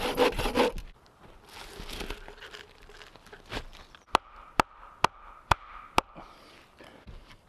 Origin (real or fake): real